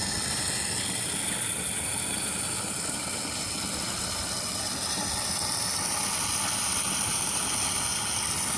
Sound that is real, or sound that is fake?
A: real